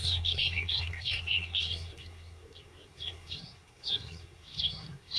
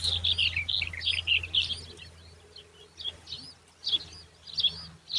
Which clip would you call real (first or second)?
second